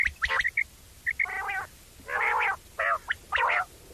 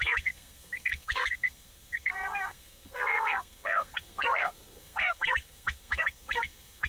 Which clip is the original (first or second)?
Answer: first